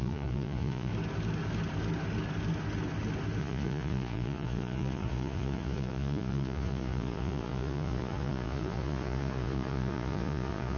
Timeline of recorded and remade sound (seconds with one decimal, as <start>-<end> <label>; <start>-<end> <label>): 0.0-0.9 remade; 0.9-3.4 recorded; 3.4-10.8 remade